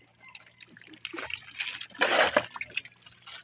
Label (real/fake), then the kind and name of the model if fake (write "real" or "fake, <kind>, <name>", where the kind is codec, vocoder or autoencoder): real